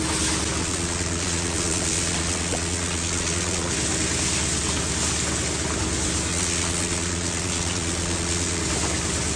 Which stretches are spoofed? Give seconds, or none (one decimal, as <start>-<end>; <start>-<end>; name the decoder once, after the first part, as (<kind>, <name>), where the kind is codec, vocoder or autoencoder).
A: 0.6-3.7 (vocoder, Vocos); 6.3-8.6